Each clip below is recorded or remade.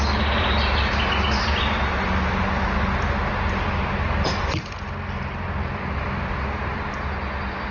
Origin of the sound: recorded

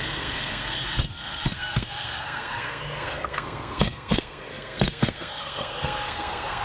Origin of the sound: remade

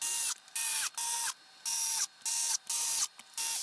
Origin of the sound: recorded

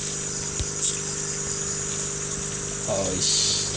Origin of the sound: recorded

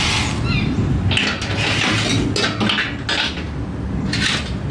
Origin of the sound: recorded